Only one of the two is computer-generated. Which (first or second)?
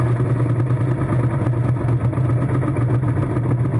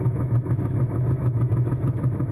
second